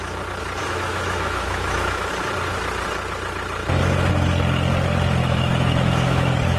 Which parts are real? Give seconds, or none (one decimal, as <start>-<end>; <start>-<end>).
0.0-0.6; 2.1-5.2